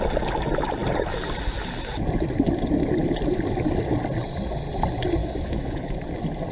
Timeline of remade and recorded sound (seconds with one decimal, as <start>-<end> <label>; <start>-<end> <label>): 0.0-5.2 recorded; 5.2-6.0 remade; 6.0-6.5 recorded